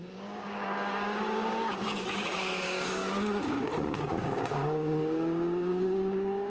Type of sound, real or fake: fake